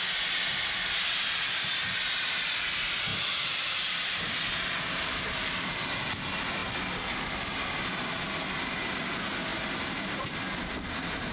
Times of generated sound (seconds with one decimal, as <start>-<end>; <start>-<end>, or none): 3.1-4.3